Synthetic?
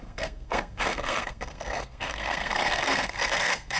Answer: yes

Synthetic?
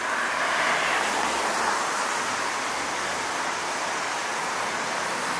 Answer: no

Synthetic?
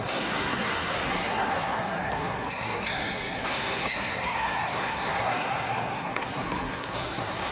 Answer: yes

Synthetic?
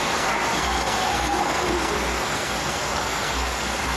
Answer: yes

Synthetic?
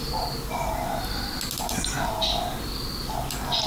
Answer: no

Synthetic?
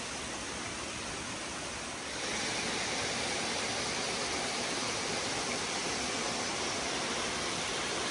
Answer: no